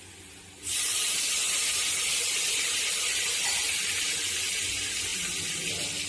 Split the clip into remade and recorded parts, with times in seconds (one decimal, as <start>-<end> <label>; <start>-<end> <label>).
0.0-6.1 recorded